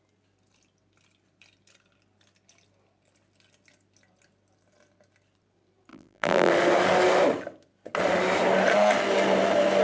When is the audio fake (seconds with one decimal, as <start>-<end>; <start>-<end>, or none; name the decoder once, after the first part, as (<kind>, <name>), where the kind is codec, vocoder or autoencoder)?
5.9-6.5 (vocoder, BigVGAN v2)